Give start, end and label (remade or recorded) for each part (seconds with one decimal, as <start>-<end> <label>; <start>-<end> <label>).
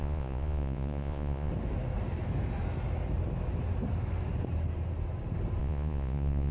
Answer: 0.0-1.5 remade; 1.5-5.6 recorded; 5.6-6.5 remade